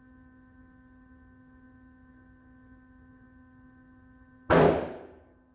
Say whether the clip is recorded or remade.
recorded